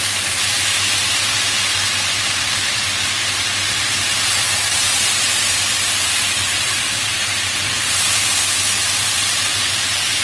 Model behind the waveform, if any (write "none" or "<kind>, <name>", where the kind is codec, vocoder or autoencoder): vocoder, BigVGAN v2